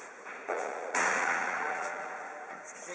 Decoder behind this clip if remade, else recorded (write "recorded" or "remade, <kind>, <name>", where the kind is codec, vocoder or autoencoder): remade, vocoder, Vocos